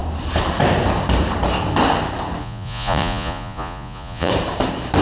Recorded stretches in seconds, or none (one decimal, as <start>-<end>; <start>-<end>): 0.0-2.4; 4.3-5.0